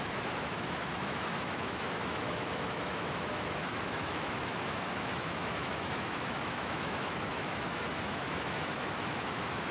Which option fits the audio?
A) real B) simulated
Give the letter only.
B